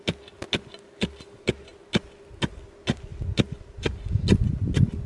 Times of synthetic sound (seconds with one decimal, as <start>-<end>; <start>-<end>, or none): none